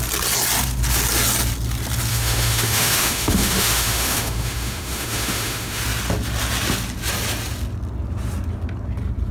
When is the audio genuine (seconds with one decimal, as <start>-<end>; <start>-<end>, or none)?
0.0-2.1; 5.8-9.3